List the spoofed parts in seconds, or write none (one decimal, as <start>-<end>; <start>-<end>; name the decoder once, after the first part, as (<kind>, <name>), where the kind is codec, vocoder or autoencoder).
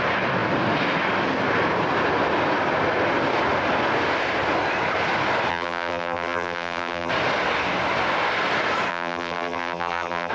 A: 5.5-7.1 (vocoder, BigVGAN v2); 8.9-10.3